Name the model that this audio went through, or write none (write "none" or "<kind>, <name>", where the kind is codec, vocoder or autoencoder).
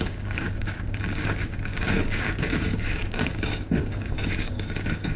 codec, DAC